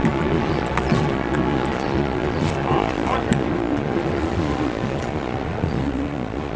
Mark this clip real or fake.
fake